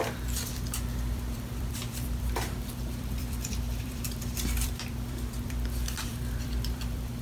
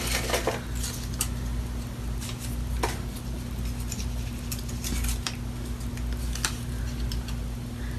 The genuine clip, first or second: second